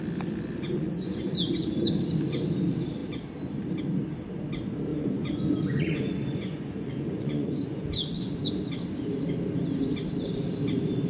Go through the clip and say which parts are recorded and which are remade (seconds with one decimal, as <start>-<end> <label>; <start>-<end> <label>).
0.0-0.5 recorded; 0.5-1.9 remade; 1.9-4.9 recorded; 4.9-8.5 remade; 8.5-11.1 recorded